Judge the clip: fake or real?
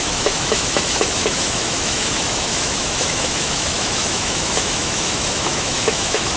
fake